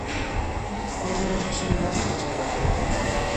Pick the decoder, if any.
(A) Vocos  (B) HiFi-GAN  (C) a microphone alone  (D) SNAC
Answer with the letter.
D